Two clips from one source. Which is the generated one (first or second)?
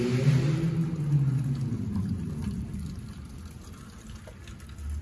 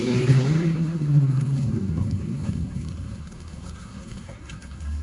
second